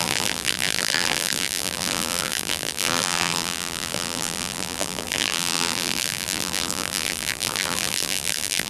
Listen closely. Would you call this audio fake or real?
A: fake